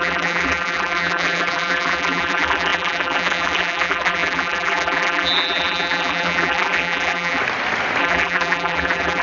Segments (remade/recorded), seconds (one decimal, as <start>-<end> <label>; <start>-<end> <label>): 0.0-7.4 remade; 7.4-8.0 recorded; 8.0-9.2 remade